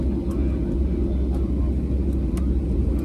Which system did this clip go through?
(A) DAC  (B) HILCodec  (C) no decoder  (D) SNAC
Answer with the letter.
C